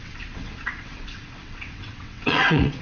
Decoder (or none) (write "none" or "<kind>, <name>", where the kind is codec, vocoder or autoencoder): vocoder, WaveNeXt